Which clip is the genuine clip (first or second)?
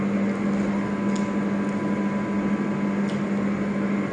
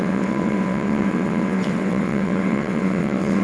first